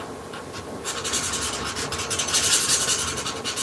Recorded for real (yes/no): yes